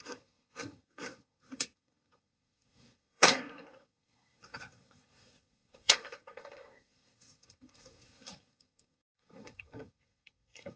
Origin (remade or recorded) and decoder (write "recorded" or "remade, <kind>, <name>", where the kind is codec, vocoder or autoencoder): remade, codec, SNAC